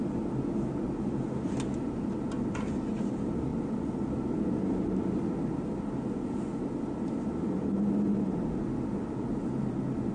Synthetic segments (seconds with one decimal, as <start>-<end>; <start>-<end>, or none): none